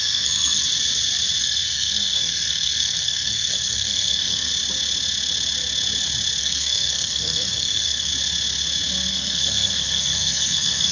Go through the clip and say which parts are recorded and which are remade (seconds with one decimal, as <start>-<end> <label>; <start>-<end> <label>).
0.0-0.6 remade; 0.6-1.4 recorded; 1.4-4.5 remade; 4.5-6.4 recorded; 6.4-8.1 remade; 8.1-9.1 recorded; 9.1-10.9 remade